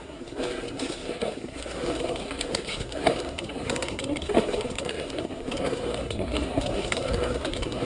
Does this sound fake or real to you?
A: fake